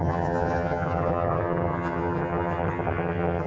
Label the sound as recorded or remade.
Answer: remade